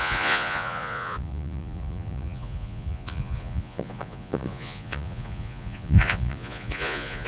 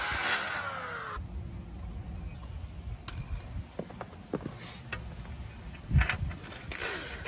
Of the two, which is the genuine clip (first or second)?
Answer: second